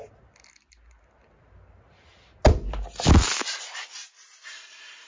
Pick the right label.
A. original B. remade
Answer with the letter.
A